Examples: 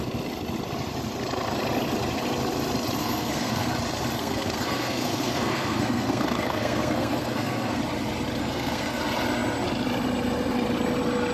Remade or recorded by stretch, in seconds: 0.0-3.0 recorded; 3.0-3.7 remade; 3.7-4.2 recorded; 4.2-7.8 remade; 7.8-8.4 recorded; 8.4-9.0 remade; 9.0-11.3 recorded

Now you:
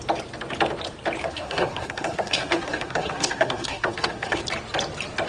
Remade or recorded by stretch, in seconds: 0.0-1.2 recorded; 1.2-4.4 remade; 4.4-5.3 recorded

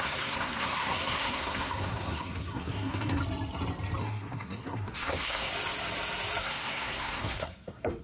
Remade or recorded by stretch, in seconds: 0.0-3.2 remade; 3.2-4.0 recorded; 4.0-5.5 remade; 5.5-6.4 recorded; 6.4-8.0 remade